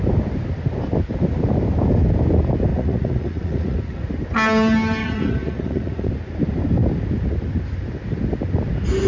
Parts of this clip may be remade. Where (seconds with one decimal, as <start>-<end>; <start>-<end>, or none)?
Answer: 2.7-4.0; 5.0-6.1